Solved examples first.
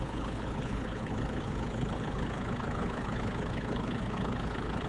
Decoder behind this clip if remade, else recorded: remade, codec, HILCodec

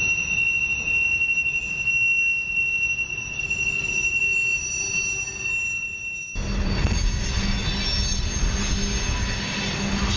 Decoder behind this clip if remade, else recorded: recorded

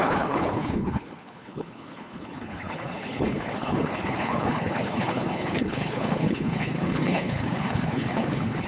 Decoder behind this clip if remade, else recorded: remade, codec, HILCodec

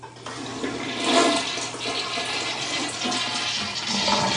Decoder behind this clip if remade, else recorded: recorded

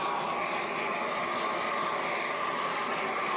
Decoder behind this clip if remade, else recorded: recorded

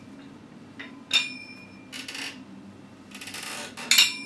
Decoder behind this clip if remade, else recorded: recorded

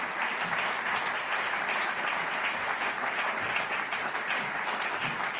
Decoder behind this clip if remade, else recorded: recorded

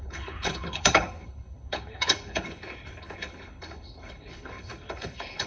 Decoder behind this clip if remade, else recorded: remade, codec, HILCodec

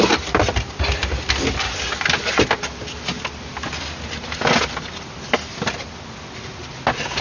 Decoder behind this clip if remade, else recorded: recorded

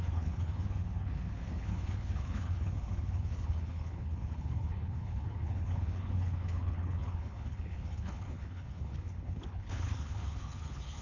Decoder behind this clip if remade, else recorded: remade, codec, HILCodec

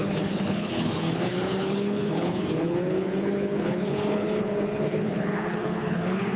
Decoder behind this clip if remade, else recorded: remade, codec, HILCodec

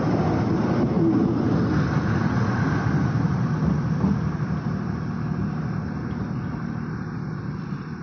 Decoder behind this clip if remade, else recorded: recorded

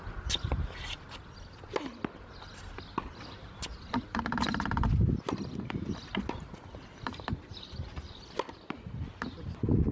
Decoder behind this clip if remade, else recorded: recorded